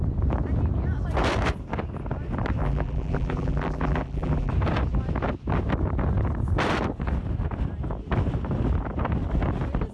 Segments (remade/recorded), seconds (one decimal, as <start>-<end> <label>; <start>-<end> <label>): 0.0-2.6 recorded; 2.6-4.5 remade; 4.5-9.9 recorded